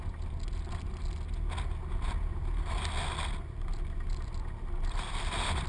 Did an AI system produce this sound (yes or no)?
no